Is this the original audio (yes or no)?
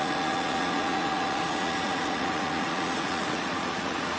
no